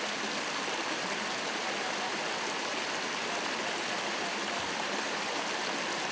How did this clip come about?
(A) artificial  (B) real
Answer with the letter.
B